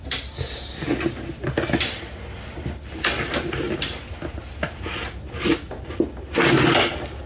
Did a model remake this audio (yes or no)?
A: no